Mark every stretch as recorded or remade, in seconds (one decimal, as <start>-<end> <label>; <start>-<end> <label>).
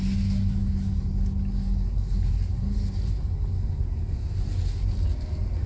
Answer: 0.0-5.7 recorded